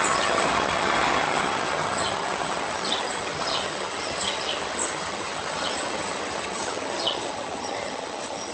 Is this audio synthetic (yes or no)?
yes